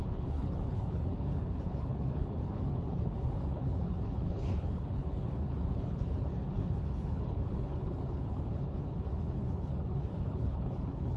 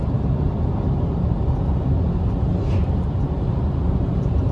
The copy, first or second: first